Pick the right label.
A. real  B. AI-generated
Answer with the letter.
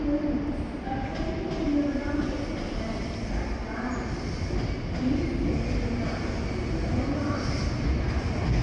A